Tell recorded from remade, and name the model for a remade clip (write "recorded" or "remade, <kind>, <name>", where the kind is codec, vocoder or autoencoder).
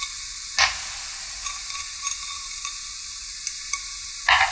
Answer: recorded